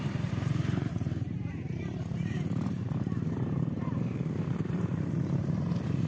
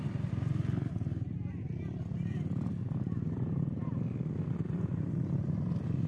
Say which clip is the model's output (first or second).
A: first